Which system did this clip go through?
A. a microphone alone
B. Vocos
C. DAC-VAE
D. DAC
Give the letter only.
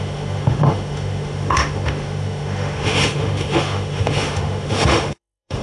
C